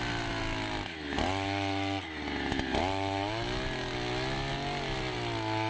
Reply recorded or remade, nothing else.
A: recorded